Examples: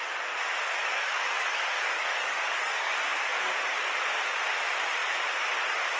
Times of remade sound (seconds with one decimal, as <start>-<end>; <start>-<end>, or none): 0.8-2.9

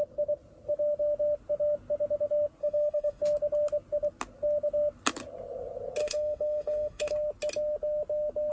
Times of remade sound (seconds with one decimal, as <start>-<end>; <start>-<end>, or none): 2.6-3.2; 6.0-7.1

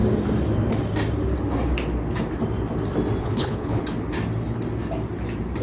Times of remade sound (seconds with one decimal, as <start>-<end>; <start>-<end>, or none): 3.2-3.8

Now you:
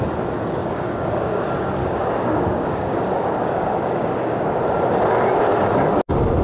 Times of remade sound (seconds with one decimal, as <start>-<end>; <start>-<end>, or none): 0.6-1.4; 1.8-4.5